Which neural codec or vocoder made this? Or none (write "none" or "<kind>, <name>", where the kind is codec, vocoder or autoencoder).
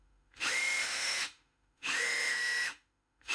autoencoder, DAC-VAE